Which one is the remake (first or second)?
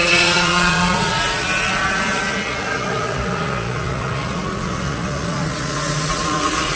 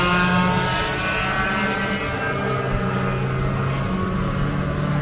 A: first